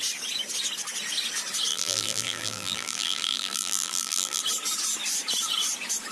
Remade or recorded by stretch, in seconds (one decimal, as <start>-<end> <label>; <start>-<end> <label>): 0.0-1.7 recorded; 1.7-4.4 remade; 4.4-6.1 recorded